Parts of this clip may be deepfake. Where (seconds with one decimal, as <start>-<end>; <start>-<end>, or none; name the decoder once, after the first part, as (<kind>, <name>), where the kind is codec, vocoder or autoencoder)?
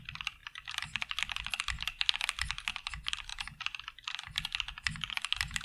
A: 3.3-3.8 (vocoder, BigVGAN v2)